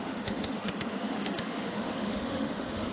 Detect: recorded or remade remade